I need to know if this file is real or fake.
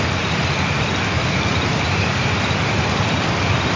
real